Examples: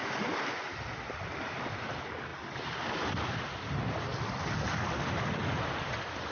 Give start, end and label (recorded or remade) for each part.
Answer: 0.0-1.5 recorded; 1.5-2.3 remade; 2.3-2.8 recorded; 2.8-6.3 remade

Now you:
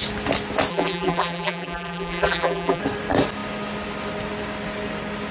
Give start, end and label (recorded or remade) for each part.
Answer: 0.0-0.7 recorded; 0.7-2.8 remade; 2.8-5.3 recorded

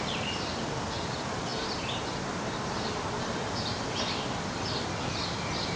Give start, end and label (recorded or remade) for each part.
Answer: 0.0-5.8 recorded

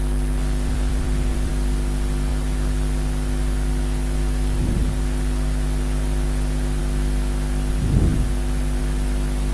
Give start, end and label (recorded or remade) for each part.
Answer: 0.0-0.4 recorded; 0.4-1.5 remade; 1.5-9.5 recorded